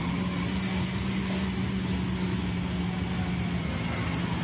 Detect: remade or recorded recorded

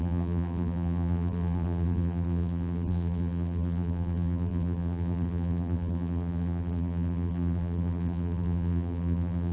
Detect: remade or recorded remade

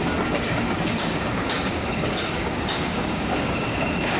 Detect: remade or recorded remade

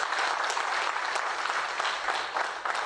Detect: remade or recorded recorded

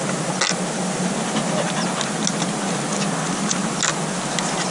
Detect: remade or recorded recorded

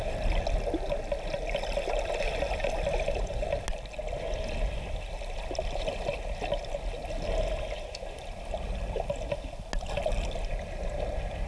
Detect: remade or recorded recorded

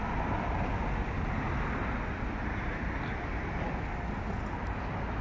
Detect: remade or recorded recorded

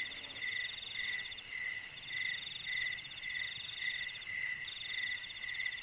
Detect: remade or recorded recorded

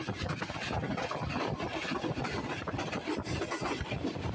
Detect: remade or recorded recorded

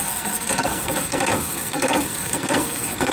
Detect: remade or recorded remade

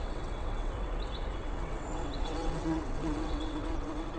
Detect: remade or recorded remade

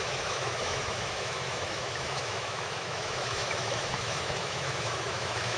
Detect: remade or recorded remade